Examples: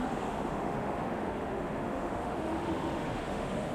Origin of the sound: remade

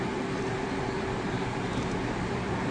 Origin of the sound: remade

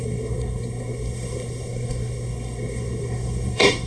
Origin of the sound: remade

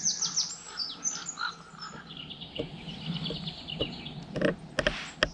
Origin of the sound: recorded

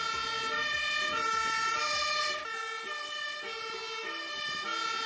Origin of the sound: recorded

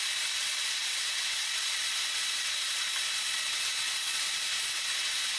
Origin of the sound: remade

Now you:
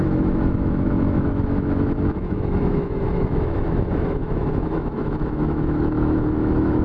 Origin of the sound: remade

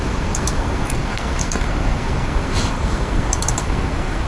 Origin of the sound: remade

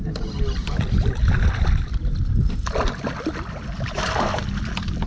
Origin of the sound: recorded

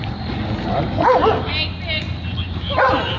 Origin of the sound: recorded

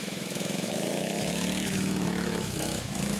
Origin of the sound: remade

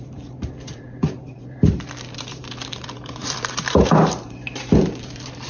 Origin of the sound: remade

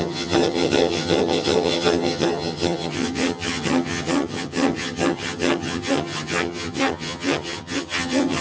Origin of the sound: remade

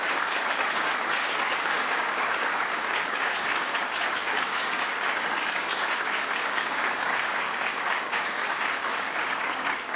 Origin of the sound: remade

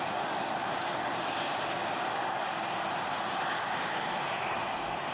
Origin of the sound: recorded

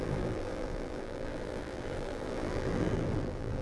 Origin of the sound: remade